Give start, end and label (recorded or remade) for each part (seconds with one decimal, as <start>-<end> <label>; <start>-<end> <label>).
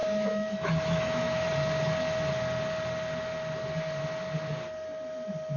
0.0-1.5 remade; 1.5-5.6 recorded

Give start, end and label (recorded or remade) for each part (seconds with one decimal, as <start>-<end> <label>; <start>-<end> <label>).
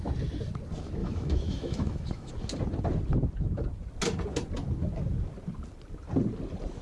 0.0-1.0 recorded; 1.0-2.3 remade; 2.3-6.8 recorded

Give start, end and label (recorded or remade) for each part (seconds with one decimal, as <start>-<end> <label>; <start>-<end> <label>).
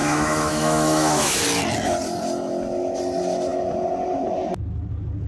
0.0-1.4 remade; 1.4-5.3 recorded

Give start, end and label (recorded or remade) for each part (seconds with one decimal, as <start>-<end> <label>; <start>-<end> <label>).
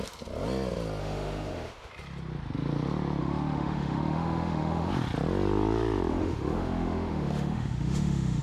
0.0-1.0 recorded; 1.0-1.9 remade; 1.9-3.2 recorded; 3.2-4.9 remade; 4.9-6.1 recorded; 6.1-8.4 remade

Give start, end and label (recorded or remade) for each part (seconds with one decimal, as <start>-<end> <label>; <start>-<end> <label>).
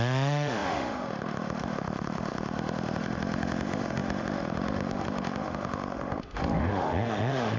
0.0-7.6 remade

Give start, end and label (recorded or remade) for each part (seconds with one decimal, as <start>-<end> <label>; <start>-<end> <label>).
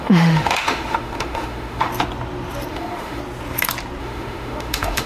0.0-1.9 remade; 1.9-2.7 recorded; 2.7-3.2 remade; 3.2-4.0 recorded; 4.0-5.1 remade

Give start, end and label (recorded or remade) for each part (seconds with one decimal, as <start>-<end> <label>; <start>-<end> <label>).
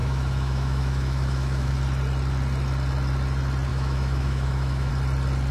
0.0-1.7 remade; 1.7-3.7 recorded; 3.7-4.9 remade; 4.9-5.5 recorded